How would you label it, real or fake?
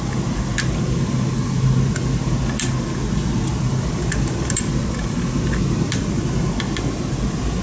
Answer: real